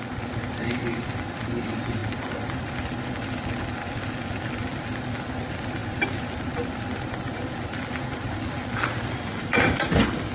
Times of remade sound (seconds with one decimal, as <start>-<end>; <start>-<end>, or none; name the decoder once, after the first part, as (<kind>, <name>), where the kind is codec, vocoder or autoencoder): none